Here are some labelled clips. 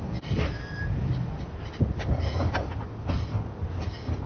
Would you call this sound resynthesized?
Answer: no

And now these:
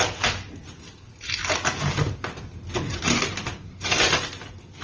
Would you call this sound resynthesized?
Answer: no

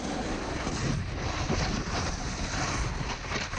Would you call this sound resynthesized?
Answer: no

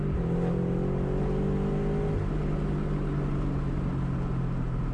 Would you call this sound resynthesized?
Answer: no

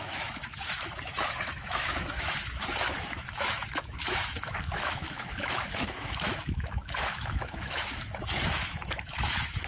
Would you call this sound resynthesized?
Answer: yes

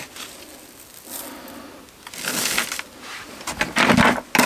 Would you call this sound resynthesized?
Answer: no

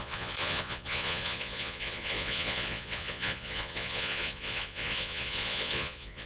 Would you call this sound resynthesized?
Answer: yes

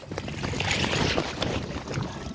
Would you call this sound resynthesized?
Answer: no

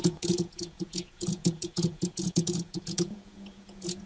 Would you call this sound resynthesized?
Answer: yes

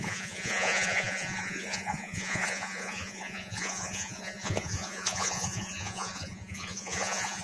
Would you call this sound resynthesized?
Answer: yes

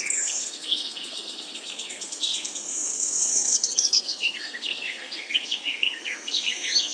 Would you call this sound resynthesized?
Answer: yes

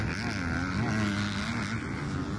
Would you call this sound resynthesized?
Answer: no